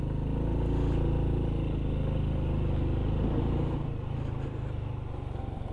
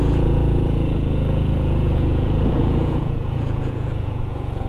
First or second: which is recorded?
first